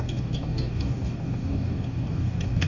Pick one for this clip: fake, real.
fake